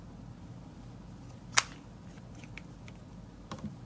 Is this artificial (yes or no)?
no